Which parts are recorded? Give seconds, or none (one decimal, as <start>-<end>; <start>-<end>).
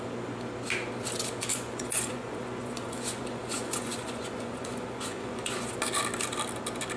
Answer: 0.0-1.5; 5.7-7.0